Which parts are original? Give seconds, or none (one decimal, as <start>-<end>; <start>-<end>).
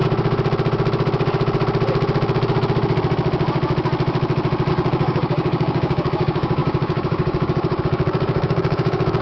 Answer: 0.0-4.7